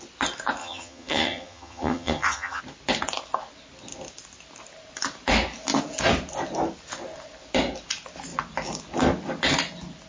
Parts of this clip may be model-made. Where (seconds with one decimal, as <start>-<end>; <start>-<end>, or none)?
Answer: 0.6-2.6